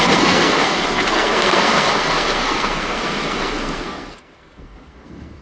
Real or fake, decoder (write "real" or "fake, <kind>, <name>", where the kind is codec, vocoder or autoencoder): fake, codec, SNAC